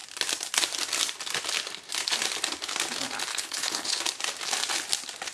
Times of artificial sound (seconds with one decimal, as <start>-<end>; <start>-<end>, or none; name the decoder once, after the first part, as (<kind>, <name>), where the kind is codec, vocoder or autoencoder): 3.3-4.0 (codec, HILCodec)